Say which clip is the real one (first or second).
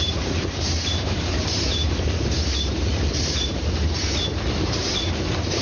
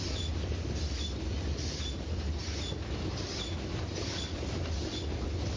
second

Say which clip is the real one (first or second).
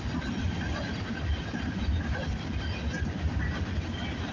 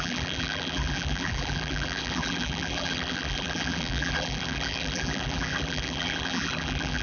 first